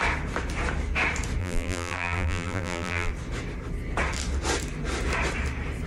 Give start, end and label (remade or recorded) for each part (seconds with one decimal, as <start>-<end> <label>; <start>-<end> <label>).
0.0-1.4 recorded; 1.4-3.1 remade; 3.1-5.9 recorded